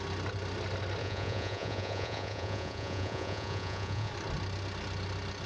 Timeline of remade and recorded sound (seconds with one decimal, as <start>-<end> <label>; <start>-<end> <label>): 0.0-1.0 recorded; 1.0-4.1 remade; 4.1-5.5 recorded